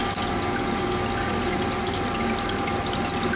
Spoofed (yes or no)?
no